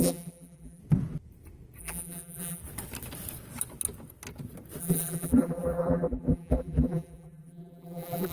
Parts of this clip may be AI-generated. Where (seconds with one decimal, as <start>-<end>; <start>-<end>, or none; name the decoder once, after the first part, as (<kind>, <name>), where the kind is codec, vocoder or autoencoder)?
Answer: 0.0-0.8 (vocoder, BigVGAN v2); 1.8-2.6; 4.8-8.3

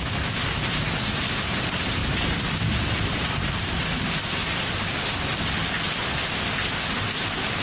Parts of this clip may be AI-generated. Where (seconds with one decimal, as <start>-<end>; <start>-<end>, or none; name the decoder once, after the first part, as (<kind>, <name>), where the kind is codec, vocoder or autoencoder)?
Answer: none

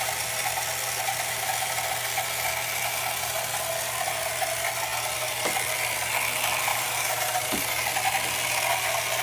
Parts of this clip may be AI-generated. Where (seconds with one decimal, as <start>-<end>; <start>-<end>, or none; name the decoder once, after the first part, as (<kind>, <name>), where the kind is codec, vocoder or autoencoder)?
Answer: 6.7-7.6 (vocoder, BigVGAN v2)